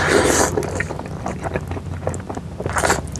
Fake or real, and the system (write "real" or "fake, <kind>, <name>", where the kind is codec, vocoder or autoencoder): real